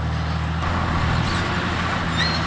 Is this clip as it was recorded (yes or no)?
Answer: yes